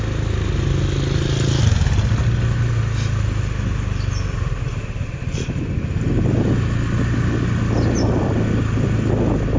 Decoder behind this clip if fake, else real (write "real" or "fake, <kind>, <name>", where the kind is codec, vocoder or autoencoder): real